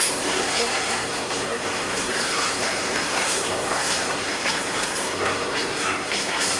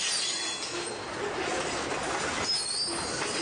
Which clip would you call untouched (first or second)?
second